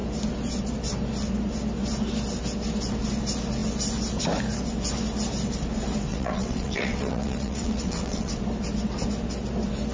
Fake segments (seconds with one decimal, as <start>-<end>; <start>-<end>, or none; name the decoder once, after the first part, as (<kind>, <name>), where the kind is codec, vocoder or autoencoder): 6.1-8.3 (vocoder, WaveNeXt)